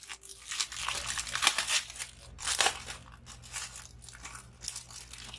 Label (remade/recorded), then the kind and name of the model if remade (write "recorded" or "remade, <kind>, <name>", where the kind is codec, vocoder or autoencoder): recorded